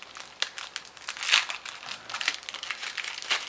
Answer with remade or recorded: recorded